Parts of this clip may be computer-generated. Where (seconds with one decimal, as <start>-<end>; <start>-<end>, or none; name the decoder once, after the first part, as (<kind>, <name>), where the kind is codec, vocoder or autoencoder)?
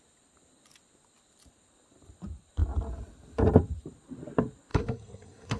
4.7-5.6 (codec, SNAC)